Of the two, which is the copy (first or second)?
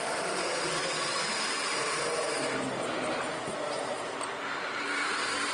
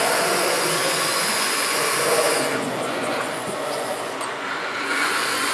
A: second